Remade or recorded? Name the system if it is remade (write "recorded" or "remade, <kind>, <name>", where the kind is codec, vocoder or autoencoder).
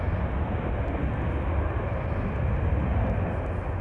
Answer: recorded